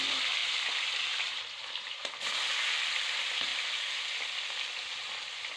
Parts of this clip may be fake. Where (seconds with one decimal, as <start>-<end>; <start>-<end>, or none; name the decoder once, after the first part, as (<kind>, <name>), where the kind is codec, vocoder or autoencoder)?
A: 0.4-2.1 (vocoder, BigVGAN v2)